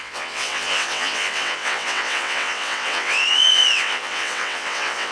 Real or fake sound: fake